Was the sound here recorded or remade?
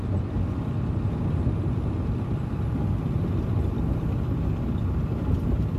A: recorded